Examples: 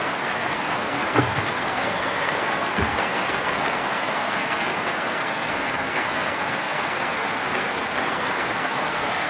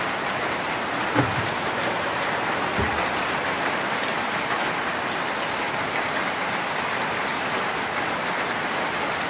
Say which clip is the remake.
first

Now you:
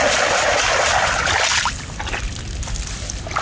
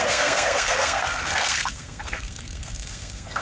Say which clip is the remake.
second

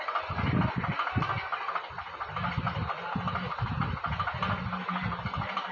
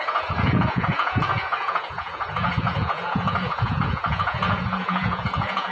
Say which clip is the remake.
second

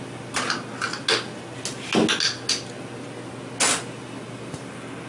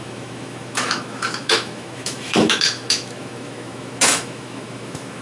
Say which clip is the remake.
second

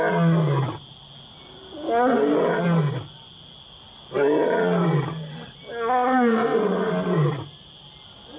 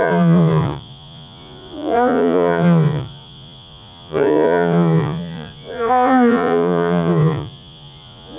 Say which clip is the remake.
second